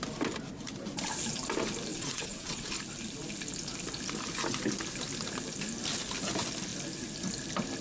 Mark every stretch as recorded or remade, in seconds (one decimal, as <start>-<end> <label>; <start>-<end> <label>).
0.0-1.9 recorded; 1.9-2.7 remade; 2.7-7.8 recorded

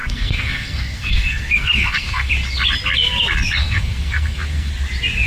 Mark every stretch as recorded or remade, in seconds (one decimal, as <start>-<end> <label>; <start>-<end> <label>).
0.0-2.3 remade; 2.3-3.6 recorded; 3.6-4.7 remade; 4.7-5.3 recorded

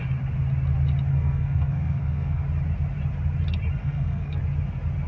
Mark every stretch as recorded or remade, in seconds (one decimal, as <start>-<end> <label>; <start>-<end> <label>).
0.0-1.1 recorded; 1.1-2.4 remade; 2.4-3.8 recorded; 3.8-4.4 remade; 4.4-5.1 recorded